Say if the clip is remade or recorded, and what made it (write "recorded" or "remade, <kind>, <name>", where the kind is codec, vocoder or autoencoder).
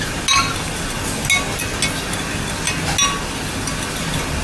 recorded